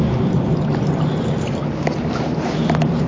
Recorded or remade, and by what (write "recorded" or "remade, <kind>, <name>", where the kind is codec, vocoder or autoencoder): recorded